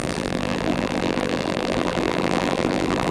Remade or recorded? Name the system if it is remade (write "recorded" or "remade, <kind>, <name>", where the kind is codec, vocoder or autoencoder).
remade, vocoder, BigVGAN v2